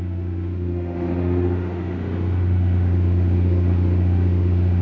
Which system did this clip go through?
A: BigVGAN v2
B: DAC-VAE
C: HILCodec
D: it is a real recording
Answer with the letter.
B